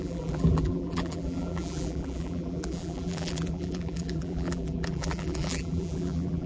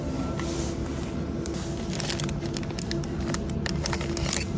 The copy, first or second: first